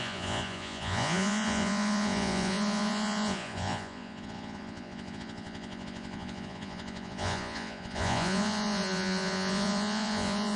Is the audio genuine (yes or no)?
no